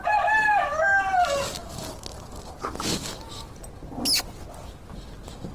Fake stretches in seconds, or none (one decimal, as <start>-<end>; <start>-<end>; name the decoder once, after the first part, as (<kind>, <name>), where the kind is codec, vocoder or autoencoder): none